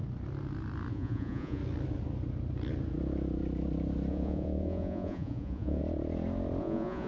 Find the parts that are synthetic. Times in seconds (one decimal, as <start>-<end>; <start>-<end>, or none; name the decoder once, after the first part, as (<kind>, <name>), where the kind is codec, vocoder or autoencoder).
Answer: 0.9-1.6 (vocoder, Vocos); 4.1-5.8; 6.6-7.1